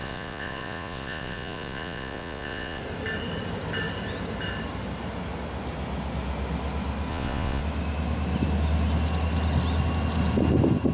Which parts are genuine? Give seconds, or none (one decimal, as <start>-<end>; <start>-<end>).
2.8-7.1; 7.6-10.9